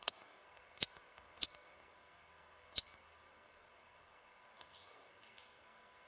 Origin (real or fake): fake